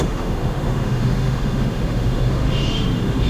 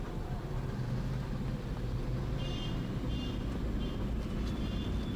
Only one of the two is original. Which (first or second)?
second